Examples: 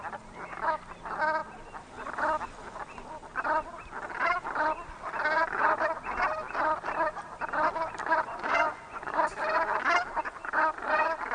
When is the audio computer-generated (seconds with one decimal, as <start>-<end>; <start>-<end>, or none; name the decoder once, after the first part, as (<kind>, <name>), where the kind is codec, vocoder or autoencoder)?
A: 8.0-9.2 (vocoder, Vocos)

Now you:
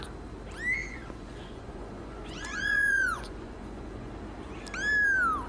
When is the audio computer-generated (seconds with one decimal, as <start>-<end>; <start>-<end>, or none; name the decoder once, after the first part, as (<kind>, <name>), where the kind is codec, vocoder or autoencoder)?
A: 0.8-4.1 (vocoder, Vocos)

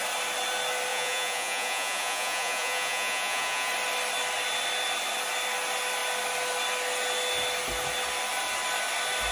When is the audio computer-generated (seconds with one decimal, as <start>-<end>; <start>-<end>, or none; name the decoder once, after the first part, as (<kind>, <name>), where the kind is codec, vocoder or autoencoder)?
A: 0.9-3.7 (vocoder, Vocos)

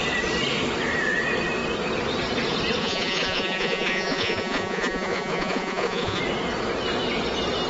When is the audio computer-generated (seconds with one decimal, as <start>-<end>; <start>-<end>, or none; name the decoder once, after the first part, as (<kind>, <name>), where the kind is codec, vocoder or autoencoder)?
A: 2.8-6.2 (vocoder, Vocos)

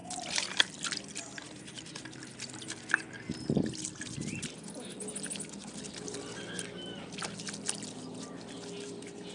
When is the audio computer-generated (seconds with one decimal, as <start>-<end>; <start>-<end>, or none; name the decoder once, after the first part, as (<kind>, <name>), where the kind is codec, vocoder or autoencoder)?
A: none